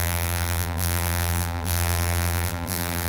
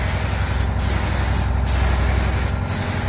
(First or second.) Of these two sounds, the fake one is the first